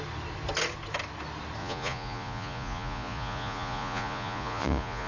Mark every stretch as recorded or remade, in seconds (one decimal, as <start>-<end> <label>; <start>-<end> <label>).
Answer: 0.0-1.6 recorded; 1.6-5.1 remade